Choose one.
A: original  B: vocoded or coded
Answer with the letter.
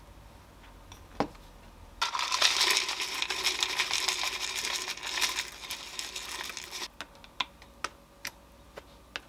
A